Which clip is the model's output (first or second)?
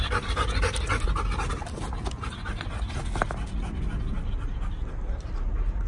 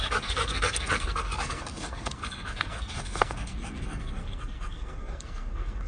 second